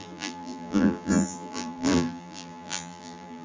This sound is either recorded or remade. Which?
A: remade